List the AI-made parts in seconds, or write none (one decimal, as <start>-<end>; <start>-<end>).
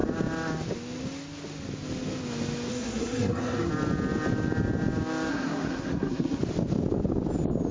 2.7-3.7; 5.3-6.4